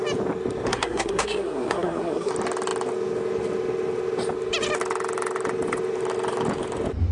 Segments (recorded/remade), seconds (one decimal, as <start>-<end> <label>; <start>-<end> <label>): 0.0-0.7 recorded; 0.7-2.3 remade; 2.3-7.1 recorded